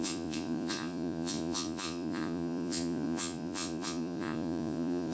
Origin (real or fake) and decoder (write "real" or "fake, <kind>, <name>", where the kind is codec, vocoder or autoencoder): fake, vocoder, Vocos